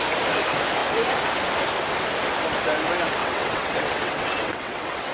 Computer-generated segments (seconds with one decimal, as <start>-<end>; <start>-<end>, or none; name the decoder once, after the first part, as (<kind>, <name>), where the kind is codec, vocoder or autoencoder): 3.2-5.1 (vocoder, WaveNeXt)